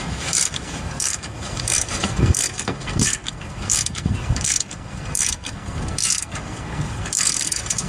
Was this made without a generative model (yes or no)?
no